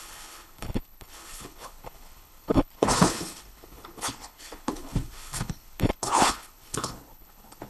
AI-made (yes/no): yes